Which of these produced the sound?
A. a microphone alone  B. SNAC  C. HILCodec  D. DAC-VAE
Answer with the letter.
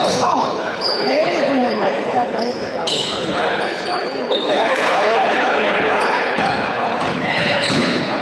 C